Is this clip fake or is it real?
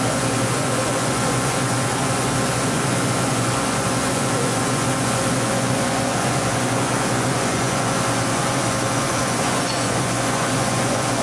fake